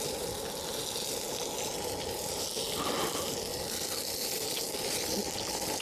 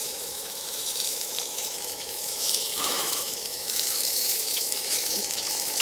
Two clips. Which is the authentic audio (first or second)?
first